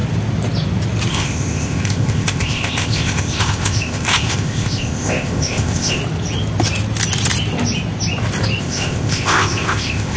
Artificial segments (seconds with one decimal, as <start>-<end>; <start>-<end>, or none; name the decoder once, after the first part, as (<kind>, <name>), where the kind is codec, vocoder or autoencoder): 1.1-6.0 (codec, ZipCodec); 8.6-10.2